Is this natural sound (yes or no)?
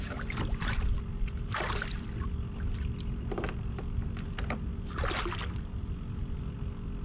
yes